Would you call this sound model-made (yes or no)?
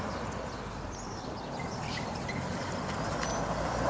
no